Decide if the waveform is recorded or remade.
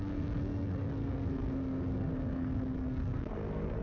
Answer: remade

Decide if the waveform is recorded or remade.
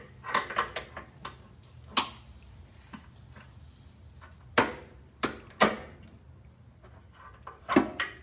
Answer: recorded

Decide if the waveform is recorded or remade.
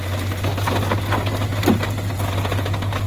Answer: recorded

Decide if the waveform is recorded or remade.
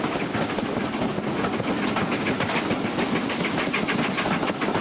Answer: recorded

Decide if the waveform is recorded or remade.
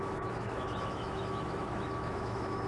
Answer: remade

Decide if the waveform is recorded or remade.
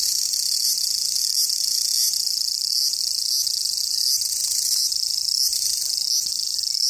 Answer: recorded